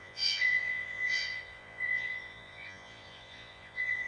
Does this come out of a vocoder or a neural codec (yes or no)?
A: yes